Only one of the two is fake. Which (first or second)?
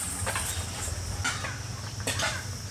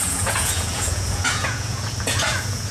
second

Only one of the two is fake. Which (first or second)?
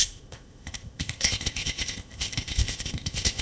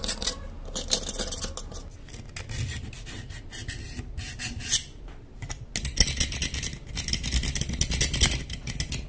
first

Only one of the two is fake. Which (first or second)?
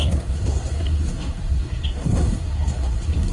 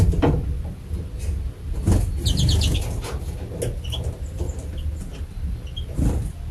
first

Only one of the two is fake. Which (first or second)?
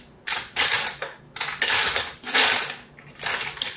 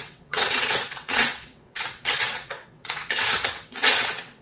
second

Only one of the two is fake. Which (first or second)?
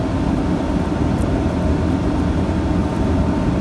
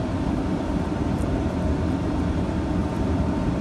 second